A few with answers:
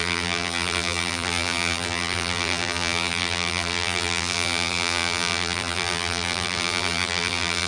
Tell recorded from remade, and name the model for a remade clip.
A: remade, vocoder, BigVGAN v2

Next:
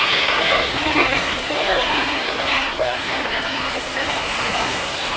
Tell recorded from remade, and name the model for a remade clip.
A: remade, codec, SNAC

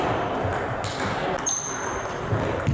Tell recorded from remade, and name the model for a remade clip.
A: remade, vocoder, BigVGAN v2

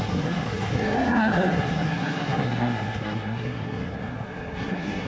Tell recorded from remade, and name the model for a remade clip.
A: remade, codec, SNAC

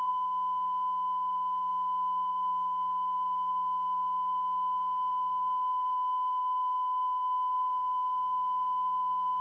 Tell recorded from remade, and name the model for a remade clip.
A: remade, codec, DAC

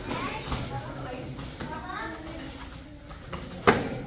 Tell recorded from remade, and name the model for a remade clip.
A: recorded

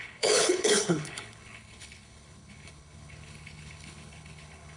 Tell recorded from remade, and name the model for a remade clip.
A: remade, codec, HILCodec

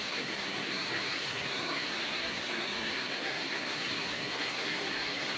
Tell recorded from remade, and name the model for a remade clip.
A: remade, codec, SNAC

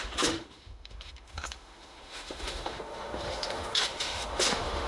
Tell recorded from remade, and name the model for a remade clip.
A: remade, autoencoder, DAC-VAE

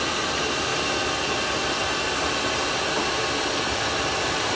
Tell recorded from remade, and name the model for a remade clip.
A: recorded